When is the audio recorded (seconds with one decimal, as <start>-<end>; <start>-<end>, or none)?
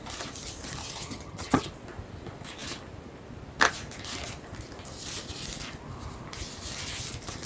0.0-0.8; 1.7-7.5